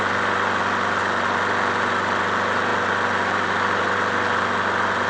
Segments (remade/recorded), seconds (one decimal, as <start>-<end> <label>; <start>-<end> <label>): 0.0-5.1 recorded